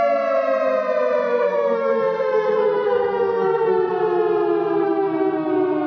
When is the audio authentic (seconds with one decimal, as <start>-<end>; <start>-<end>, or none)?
0.0-1.3; 3.9-4.8; 5.5-5.9